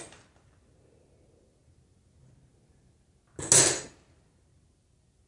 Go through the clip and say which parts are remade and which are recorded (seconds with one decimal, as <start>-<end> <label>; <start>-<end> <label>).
0.0-5.3 recorded